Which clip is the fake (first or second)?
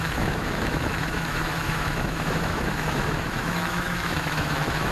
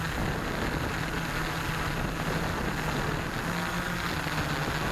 first